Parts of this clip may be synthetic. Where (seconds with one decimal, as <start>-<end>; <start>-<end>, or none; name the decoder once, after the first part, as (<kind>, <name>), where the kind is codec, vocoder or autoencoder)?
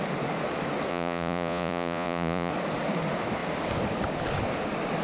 0.9-2.5 (vocoder, Vocos)